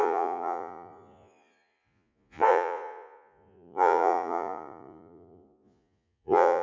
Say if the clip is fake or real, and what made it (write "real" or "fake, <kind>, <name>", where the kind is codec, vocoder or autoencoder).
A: fake, vocoder, Vocos